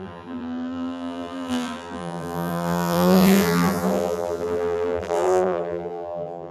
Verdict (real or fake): fake